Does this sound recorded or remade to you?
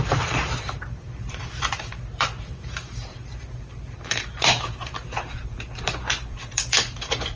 remade